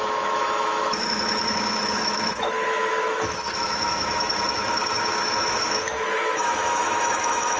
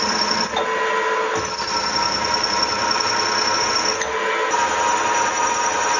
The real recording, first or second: second